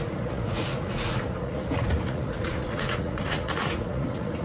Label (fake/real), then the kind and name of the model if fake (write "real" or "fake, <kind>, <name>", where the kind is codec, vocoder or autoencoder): fake, vocoder, Vocos